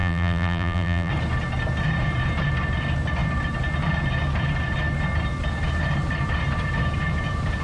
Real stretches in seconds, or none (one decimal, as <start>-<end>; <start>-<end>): 1.1-7.6